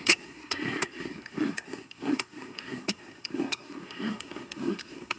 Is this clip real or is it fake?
fake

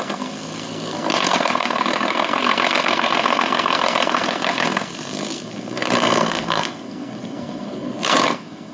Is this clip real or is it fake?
fake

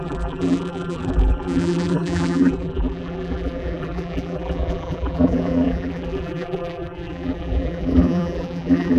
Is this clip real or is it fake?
fake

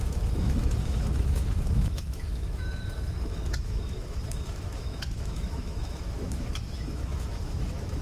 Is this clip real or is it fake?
fake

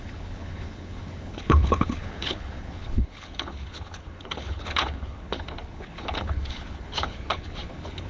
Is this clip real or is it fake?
fake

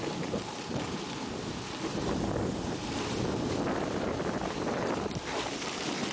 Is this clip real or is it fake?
real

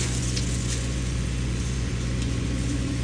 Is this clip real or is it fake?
fake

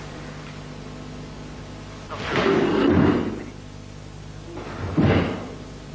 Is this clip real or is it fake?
real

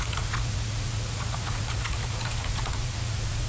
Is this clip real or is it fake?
fake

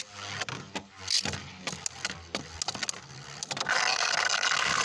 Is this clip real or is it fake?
real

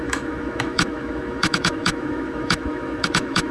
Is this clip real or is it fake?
fake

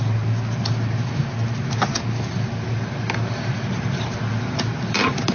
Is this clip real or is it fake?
real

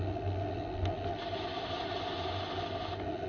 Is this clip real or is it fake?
real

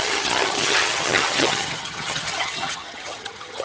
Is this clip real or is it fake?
fake